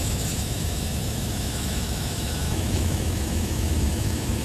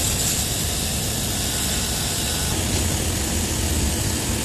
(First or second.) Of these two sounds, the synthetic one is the first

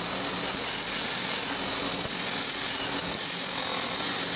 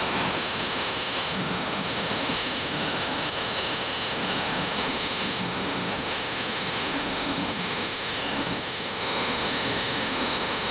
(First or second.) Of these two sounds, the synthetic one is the second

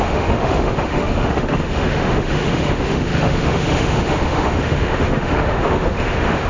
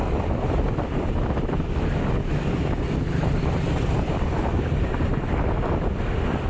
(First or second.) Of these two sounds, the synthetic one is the first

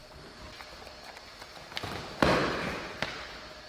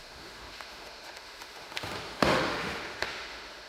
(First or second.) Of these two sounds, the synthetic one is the second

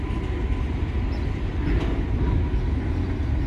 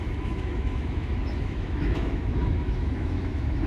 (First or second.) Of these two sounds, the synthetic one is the second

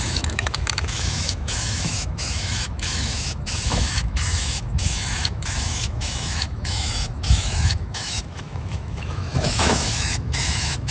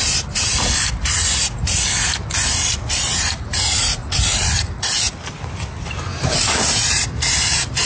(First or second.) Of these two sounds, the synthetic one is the first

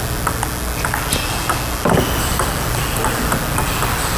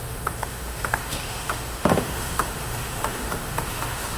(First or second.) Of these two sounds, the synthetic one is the second